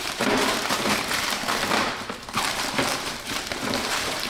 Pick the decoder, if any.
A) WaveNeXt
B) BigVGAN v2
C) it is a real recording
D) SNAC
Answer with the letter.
B